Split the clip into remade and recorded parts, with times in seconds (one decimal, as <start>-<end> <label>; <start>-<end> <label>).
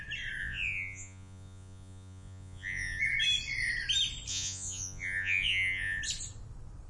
0.0-0.4 recorded; 0.4-3.0 remade; 3.0-4.3 recorded; 4.3-6.0 remade; 6.0-6.9 recorded